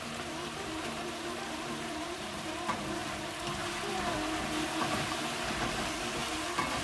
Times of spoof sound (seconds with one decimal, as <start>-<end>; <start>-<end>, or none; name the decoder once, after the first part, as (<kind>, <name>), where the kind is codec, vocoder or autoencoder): 0.0-3.0 (vocoder, BigVGAN v2); 4.8-6.2